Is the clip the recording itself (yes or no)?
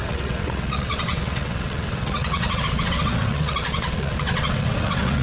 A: no